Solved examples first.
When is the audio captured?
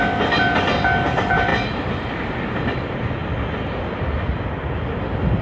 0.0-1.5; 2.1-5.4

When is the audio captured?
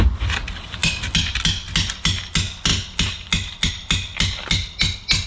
0.0-5.3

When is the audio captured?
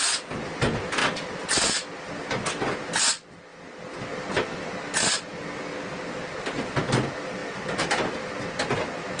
0.0-9.2